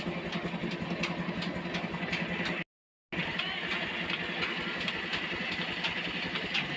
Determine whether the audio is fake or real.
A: real